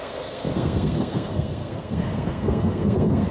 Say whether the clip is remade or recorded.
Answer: remade